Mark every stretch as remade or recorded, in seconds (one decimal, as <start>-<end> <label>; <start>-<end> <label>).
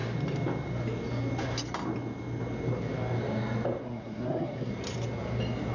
0.0-3.8 recorded; 3.8-4.7 remade; 4.7-5.7 recorded